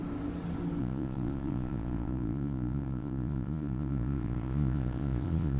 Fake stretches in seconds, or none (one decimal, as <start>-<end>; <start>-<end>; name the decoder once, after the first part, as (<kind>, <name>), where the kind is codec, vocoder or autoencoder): 0.8-5.6 (vocoder, Vocos)